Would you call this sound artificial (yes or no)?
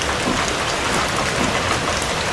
no